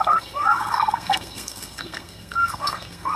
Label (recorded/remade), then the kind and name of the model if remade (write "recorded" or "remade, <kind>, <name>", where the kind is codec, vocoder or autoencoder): remade, codec, SNAC